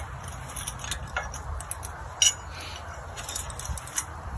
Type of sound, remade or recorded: recorded